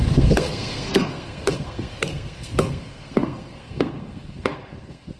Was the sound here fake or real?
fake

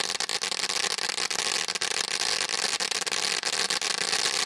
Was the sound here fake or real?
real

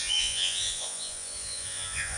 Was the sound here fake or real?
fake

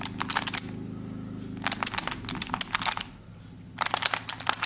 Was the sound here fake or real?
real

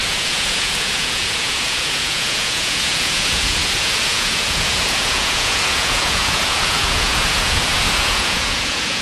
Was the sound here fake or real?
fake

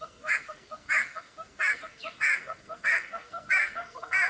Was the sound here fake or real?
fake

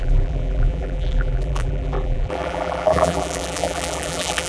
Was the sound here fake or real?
fake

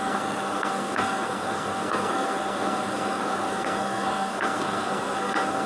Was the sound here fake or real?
fake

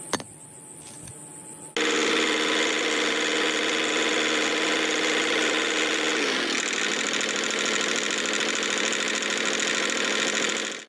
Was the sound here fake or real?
real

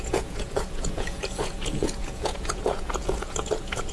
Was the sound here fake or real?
fake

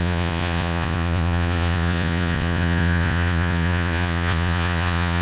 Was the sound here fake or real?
fake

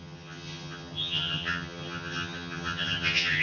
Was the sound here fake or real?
fake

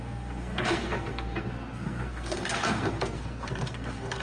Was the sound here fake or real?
fake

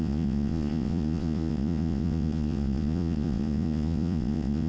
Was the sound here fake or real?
fake